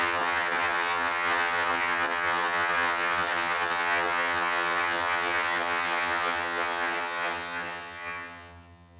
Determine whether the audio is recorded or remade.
remade